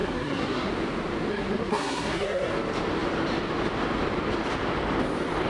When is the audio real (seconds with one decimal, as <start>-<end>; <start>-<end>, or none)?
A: 0.7-1.3; 2.5-5.5